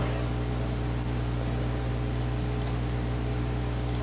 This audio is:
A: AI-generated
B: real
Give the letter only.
B